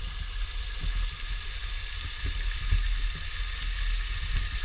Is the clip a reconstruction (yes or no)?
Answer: no